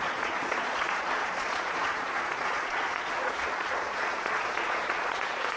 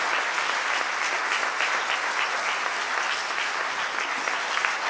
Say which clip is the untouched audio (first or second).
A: second